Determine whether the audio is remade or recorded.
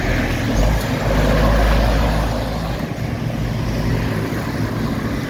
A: recorded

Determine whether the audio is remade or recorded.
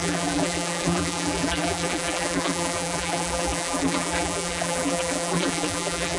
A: remade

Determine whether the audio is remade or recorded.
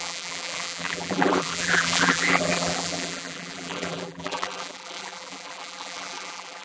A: remade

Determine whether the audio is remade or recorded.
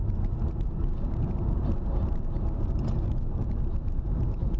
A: remade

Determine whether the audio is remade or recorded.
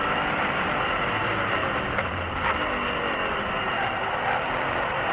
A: remade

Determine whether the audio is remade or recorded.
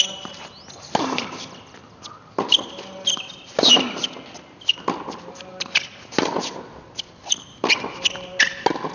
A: recorded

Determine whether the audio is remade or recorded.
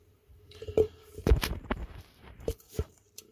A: remade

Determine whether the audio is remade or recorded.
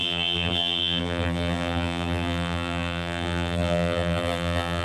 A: remade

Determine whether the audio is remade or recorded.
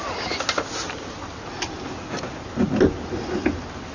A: recorded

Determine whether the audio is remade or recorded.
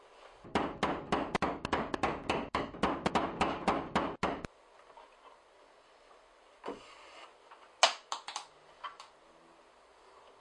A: recorded